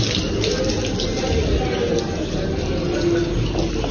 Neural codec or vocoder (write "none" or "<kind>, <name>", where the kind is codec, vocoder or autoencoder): none